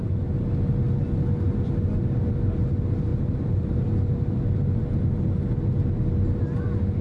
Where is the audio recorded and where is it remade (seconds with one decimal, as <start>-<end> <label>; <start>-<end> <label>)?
0.0-3.1 recorded; 3.1-3.7 remade; 3.7-7.0 recorded